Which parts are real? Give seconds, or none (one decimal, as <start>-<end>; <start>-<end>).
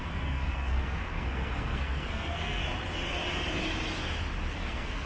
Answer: 2.6-4.5